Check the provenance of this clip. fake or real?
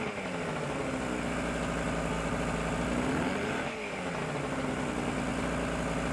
real